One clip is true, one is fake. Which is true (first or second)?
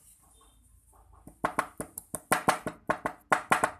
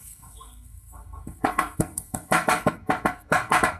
first